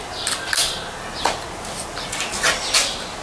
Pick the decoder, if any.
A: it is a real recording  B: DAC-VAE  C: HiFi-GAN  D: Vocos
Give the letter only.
A